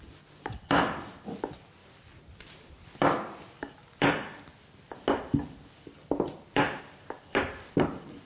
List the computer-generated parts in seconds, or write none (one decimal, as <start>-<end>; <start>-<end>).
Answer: none